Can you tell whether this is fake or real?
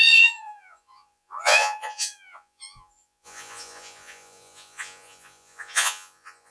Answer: fake